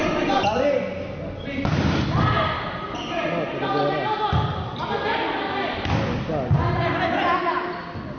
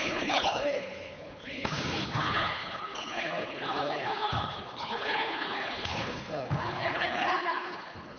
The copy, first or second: second